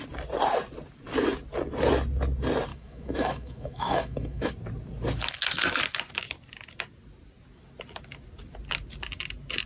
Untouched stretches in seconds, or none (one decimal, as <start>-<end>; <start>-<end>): 0.0-2.7; 4.5-9.7